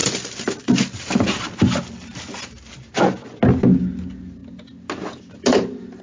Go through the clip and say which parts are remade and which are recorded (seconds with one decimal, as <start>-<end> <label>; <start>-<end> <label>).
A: 0.0-6.0 recorded